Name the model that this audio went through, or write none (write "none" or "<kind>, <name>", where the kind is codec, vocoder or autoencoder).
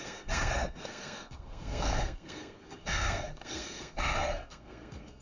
codec, SNAC